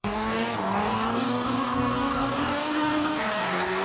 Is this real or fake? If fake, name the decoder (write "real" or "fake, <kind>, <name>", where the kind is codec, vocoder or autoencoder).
fake, codec, DAC